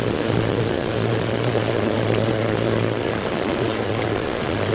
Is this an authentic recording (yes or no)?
no